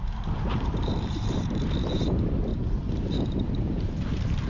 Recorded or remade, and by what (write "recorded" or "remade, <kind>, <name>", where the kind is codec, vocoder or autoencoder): remade, vocoder, BigVGAN v2